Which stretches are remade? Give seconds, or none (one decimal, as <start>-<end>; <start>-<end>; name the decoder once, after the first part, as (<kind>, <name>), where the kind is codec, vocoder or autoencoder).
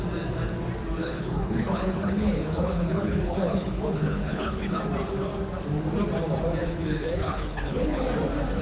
1.0-4.8 (codec, HILCodec); 6.6-8.0